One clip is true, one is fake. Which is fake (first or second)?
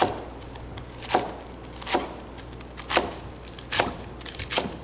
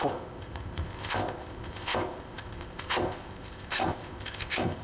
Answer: second